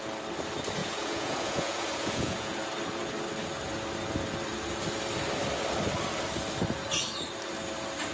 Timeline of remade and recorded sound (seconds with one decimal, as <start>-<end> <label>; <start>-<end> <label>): 0.0-0.8 recorded; 0.8-2.6 remade; 2.6-8.1 recorded